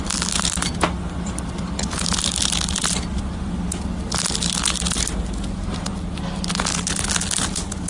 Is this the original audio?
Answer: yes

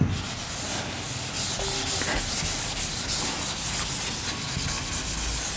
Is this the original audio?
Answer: yes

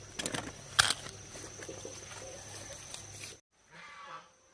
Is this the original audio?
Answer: yes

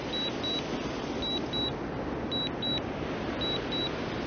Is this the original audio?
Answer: yes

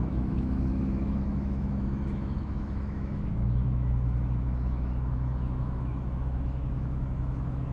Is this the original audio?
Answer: no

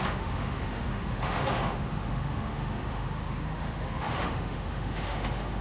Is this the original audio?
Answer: no